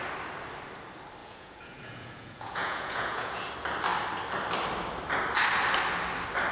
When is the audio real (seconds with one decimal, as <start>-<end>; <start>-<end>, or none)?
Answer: 0.0-1.2; 3.5-6.5